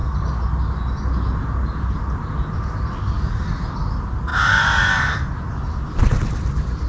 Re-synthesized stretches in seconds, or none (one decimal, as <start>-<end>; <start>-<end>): none